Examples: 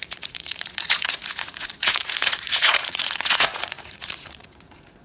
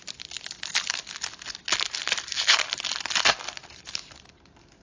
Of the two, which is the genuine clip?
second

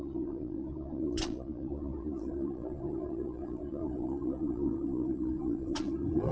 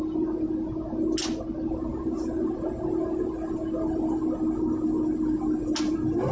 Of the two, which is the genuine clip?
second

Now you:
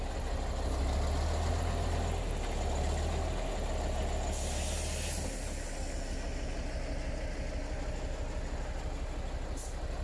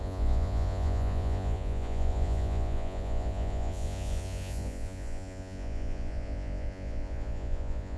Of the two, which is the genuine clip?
first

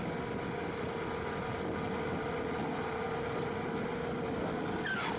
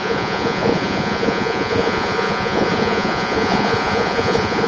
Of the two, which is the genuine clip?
first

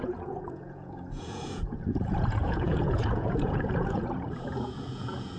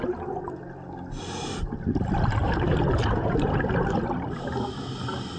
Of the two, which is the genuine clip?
second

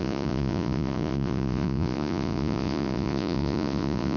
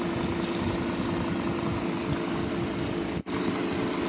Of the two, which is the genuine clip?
second